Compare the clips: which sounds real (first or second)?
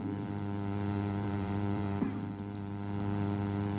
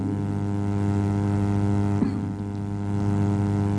second